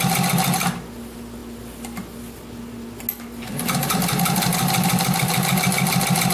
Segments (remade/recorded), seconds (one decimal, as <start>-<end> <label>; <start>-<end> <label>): 0.0-6.3 recorded